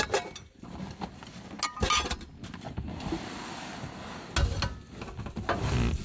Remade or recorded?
recorded